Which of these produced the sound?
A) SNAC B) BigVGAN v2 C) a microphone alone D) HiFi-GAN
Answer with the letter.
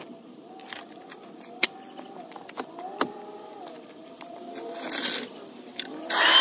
B